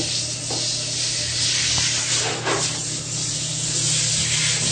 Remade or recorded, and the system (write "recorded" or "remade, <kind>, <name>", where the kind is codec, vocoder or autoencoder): recorded